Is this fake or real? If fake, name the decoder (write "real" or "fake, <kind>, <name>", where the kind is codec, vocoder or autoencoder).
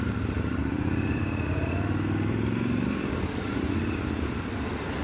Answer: fake, vocoder, BigVGAN v2